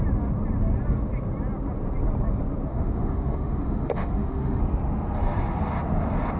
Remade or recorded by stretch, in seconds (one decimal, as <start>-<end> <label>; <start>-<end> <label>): 0.0-2.7 recorded; 2.7-4.6 remade; 4.6-6.4 recorded

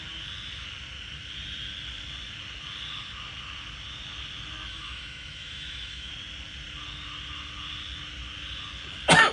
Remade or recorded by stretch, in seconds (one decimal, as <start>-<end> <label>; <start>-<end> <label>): 0.0-4.7 recorded; 4.7-6.1 remade; 6.1-9.3 recorded

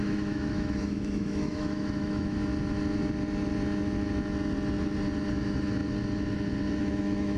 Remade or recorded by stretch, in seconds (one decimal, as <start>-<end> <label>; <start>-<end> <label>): 0.0-2.5 remade; 2.5-5.3 recorded; 5.3-5.8 remade; 5.8-6.8 recorded; 6.8-7.4 remade

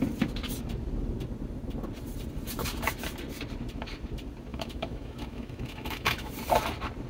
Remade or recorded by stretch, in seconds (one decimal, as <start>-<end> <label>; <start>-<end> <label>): 0.0-4.5 recorded; 4.5-6.3 remade; 6.3-7.1 recorded

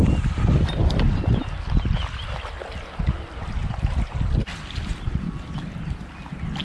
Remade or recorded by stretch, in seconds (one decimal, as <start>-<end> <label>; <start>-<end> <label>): 0.0-6.6 recorded

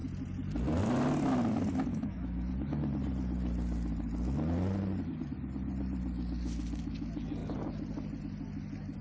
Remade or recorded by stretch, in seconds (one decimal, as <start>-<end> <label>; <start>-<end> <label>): 0.0-1.9 recorded; 1.9-2.5 remade; 2.5-9.0 recorded

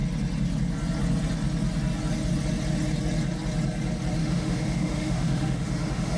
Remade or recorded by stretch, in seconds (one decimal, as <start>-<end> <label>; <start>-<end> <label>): 0.0-4.2 recorded; 4.2-6.2 remade

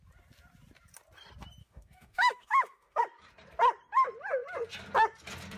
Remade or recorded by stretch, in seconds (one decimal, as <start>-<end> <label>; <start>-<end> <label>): 0.0-1.6 recorded; 1.6-3.0 remade; 3.0-5.6 recorded